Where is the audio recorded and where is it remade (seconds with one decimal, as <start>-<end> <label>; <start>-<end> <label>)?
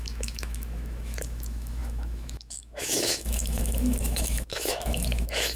0.0-5.6 remade